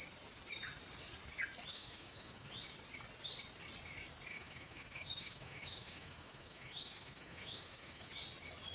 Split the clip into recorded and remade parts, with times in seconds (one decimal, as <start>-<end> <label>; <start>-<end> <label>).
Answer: 0.0-1.7 recorded; 1.7-2.5 remade; 2.5-4.3 recorded; 4.3-8.1 remade; 8.1-8.7 recorded

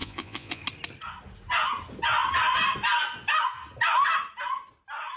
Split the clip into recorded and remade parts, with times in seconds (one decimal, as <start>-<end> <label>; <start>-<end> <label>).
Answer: 0.0-0.6 remade; 0.6-5.2 recorded

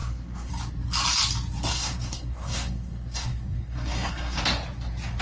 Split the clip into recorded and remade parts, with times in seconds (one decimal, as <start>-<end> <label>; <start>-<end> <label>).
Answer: 0.0-0.5 remade; 0.5-1.7 recorded; 1.7-4.4 remade; 4.4-5.2 recorded

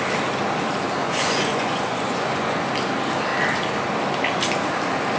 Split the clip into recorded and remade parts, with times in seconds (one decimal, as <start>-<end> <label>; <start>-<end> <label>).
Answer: 0.0-1.0 recorded; 1.0-2.6 remade; 2.6-5.2 recorded